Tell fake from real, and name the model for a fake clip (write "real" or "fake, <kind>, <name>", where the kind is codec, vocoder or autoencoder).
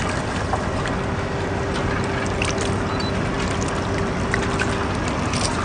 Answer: real